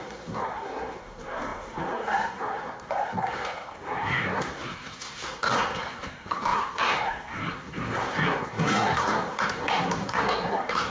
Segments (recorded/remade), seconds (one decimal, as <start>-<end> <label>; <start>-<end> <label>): 0.0-10.9 remade